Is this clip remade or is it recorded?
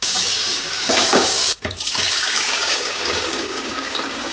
remade